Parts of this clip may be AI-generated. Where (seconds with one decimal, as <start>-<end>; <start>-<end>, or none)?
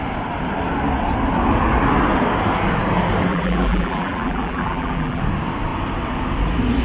3.3-5.2